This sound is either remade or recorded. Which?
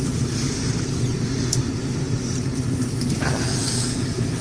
recorded